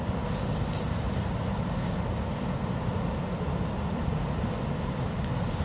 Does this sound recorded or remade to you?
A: recorded